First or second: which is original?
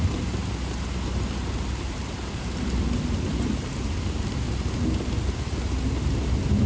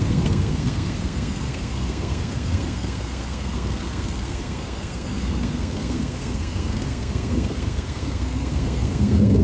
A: first